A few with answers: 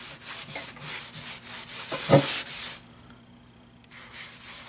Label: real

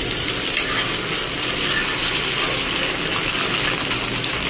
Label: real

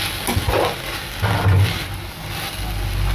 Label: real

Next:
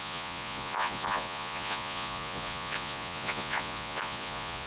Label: fake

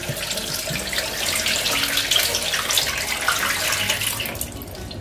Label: real